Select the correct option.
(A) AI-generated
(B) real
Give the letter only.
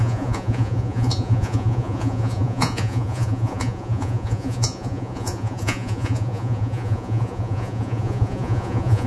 A